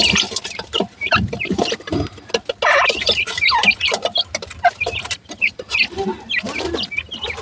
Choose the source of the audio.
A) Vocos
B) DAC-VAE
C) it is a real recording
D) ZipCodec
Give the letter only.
C